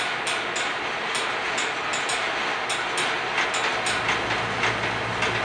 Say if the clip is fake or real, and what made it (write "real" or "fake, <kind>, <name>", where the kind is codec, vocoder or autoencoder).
real